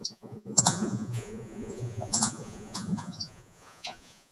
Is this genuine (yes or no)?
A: no